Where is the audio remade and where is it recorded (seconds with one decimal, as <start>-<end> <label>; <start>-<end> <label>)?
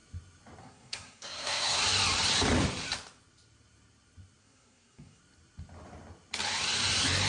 0.0-0.6 recorded; 0.6-1.8 remade; 1.8-4.4 recorded; 4.4-5.2 remade; 5.2-7.3 recorded